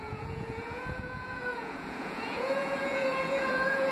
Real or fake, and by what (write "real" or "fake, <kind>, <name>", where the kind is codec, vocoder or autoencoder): fake, vocoder, Vocos